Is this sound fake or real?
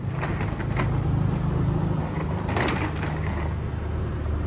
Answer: real